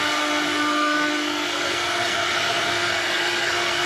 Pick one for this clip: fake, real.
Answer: fake